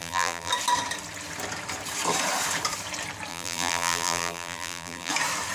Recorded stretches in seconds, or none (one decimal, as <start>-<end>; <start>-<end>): 0.5-3.3; 5.1-5.5